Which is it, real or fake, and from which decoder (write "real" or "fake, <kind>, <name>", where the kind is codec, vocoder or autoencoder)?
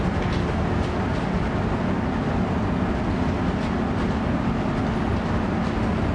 real